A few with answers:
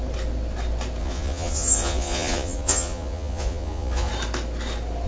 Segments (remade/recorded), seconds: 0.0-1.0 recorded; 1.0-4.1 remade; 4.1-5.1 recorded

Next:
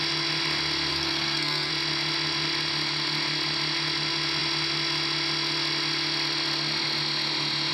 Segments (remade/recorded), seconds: 0.0-0.9 recorded; 0.9-1.7 remade; 1.7-7.7 recorded

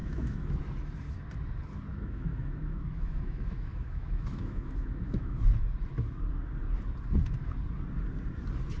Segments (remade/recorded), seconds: 0.0-0.6 remade; 0.6-1.9 recorded; 1.9-5.4 remade; 5.4-8.8 recorded

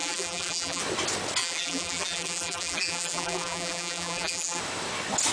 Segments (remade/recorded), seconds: 0.0-0.8 remade; 0.8-1.4 recorded; 1.4-4.6 remade; 4.6-5.3 recorded